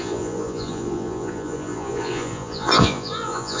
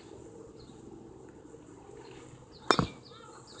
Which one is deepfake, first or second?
first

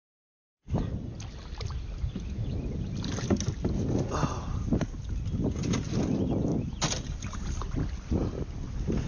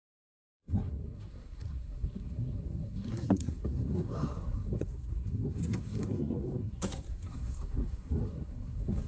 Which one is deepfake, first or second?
second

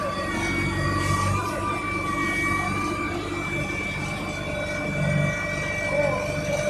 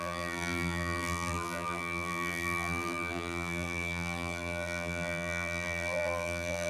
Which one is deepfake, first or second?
second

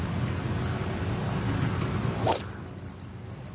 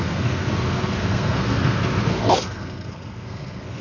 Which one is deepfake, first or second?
second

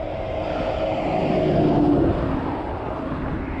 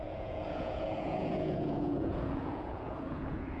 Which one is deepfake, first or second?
second